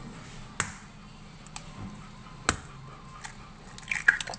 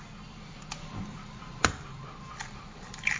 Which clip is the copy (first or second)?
second